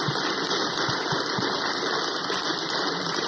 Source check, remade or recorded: recorded